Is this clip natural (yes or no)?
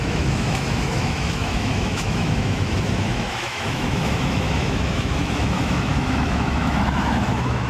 no